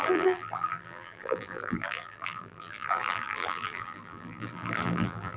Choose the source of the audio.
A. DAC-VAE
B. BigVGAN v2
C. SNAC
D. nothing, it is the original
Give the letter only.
B